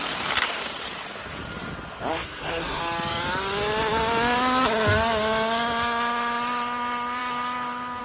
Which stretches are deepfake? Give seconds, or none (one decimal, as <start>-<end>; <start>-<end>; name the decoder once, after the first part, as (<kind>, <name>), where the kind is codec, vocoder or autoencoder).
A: 2.1-2.8 (codec, SNAC)

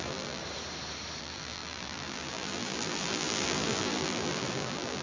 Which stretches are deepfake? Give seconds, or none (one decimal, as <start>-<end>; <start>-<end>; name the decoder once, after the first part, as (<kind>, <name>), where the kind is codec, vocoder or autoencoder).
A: 0.0-0.4 (vocoder, BigVGAN v2); 1.2-5.0

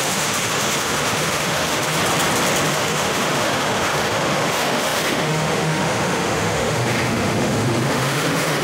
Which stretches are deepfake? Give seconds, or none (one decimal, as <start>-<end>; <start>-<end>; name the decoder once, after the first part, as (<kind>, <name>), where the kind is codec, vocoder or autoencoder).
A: 0.0-2.0 (autoencoder, DAC-VAE); 2.7-8.6